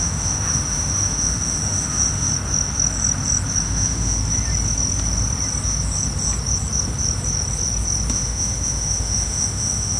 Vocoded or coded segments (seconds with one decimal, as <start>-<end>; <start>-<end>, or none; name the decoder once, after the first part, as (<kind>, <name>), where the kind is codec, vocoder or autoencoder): 0.0-2.3 (autoencoder, DAC-VAE); 3.6-4.2; 8.1-10.0